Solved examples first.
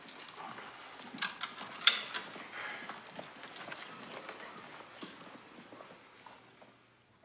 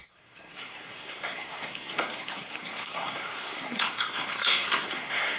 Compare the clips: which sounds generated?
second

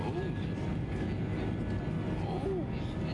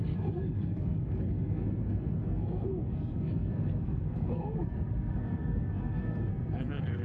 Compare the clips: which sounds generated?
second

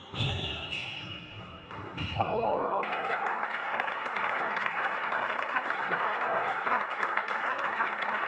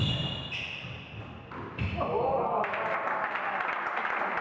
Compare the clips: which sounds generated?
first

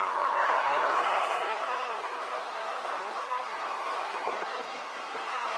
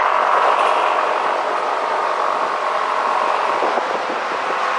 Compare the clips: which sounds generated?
first